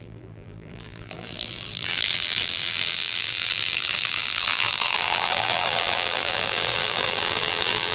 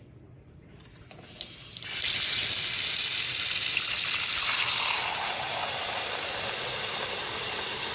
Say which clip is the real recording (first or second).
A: second